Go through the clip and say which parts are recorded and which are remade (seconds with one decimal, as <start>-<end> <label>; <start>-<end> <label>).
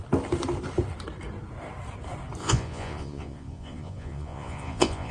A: 0.0-2.4 recorded; 2.4-5.1 remade